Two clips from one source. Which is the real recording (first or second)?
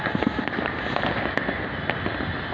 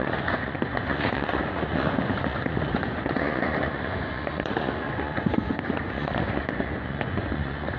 first